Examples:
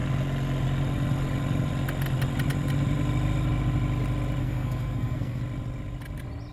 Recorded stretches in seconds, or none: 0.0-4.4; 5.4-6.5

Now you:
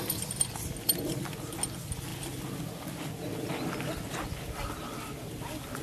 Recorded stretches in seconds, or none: 0.0-5.8